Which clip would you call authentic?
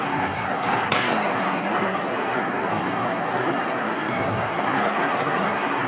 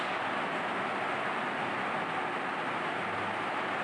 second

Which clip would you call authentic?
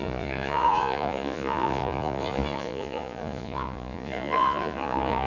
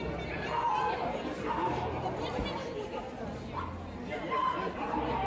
second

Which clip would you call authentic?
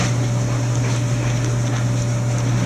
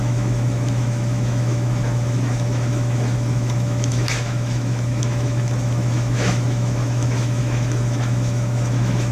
first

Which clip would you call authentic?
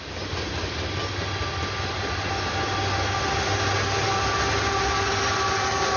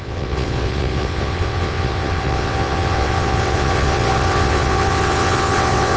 first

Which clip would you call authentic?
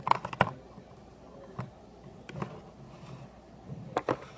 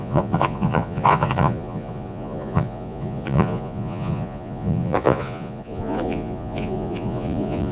first